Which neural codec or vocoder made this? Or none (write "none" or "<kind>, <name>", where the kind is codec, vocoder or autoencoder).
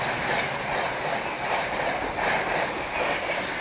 none